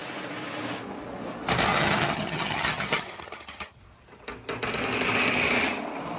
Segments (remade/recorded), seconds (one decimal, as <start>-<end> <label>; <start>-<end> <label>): 0.0-1.7 recorded; 1.7-3.8 remade; 3.8-6.2 recorded